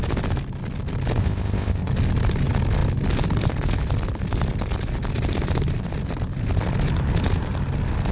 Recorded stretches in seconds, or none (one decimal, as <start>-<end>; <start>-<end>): 0.0-1.2; 1.9-8.1